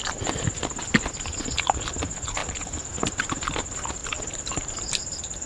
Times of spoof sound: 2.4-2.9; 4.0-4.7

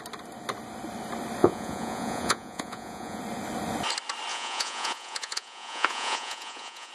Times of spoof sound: 1.4-3.2; 4.3-6.9

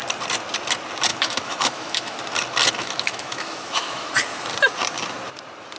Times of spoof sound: 1.1-2.2; 2.8-4.1